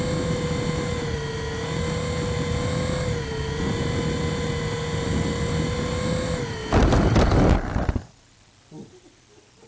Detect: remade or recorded recorded